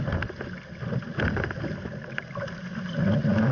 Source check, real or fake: real